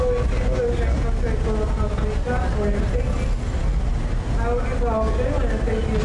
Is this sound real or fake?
real